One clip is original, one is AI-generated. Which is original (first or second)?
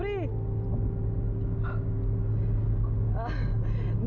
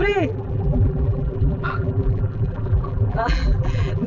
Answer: first